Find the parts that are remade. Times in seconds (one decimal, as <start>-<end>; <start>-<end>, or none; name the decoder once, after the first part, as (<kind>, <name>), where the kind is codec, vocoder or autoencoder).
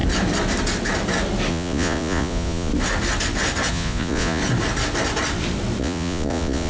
1.5-2.7 (vocoder, Vocos); 3.7-4.4; 5.8-6.7